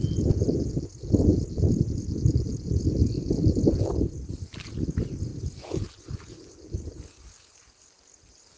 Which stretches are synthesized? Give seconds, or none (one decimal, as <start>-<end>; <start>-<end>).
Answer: none